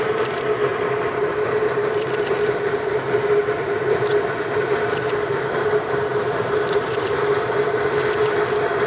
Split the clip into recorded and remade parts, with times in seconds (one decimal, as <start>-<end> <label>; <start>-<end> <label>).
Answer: 0.0-8.0 remade; 8.0-8.9 recorded